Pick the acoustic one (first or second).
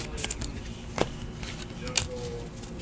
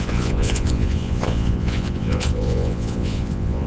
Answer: first